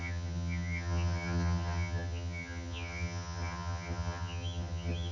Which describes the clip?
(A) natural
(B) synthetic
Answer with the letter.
B